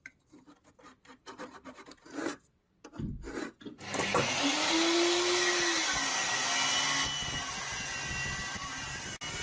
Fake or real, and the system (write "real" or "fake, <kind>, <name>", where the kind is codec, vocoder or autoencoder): real